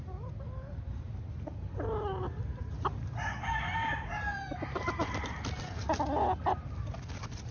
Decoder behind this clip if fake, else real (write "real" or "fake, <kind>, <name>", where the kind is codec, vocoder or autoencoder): real